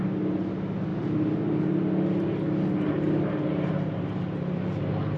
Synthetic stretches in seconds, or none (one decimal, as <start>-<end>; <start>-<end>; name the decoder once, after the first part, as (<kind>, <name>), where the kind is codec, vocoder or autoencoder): 3.5-4.8 (vocoder, BigVGAN v2)